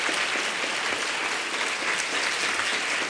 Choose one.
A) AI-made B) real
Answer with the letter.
B